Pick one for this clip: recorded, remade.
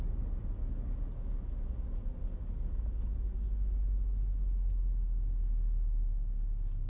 recorded